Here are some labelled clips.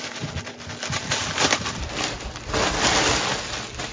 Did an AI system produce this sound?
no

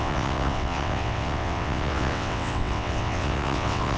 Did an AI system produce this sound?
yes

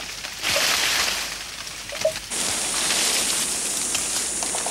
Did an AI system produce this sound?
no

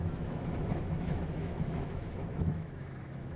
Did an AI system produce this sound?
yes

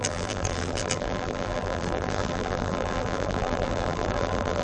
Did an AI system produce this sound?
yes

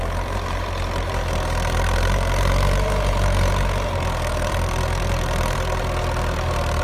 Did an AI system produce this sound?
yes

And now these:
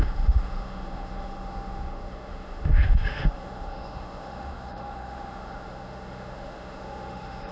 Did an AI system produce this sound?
yes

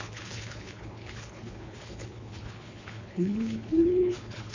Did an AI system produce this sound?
yes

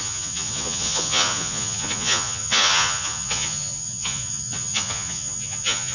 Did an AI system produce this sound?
yes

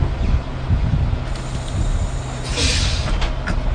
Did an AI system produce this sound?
no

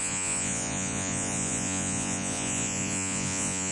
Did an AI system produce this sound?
yes